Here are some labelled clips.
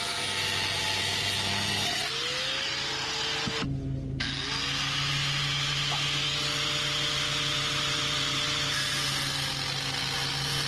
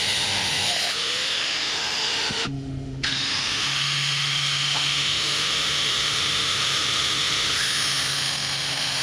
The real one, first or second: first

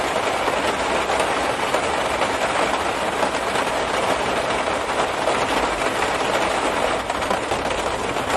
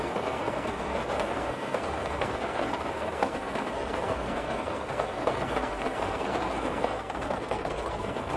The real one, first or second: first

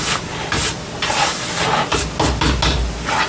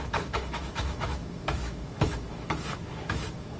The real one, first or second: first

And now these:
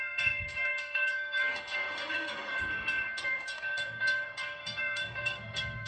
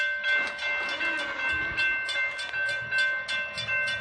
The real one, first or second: second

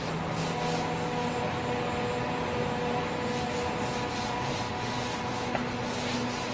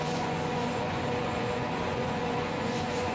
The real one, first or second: first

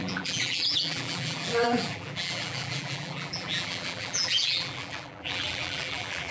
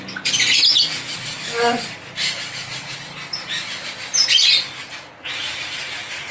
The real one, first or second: second